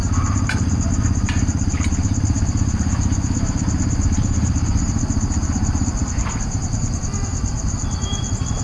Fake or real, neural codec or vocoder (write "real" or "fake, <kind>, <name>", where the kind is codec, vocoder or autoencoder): fake, vocoder, BigVGAN v2